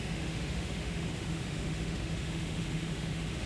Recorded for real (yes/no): no